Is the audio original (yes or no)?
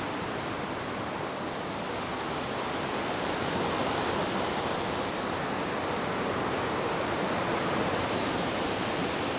yes